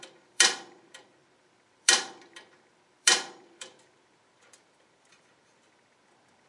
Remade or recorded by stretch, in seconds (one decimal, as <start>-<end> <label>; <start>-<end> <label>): 0.0-6.5 remade